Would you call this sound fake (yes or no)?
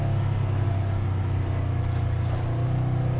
no